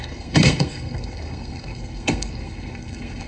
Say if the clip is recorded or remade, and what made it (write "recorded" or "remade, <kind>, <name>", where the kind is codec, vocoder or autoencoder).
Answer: remade, codec, SNAC